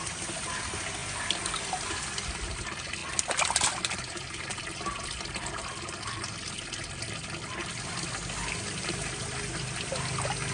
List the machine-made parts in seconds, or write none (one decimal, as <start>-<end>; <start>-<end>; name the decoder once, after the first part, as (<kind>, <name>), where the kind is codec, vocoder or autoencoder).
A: 3.0-6.3 (vocoder, BigVGAN v2)

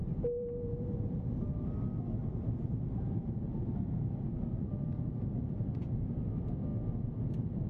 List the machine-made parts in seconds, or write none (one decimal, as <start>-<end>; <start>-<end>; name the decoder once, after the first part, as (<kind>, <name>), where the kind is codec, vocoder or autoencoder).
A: 0.0-1.5 (vocoder, BigVGAN v2); 2.2-4.7